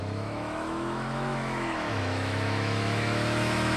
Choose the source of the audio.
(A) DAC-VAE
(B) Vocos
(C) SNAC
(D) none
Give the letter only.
A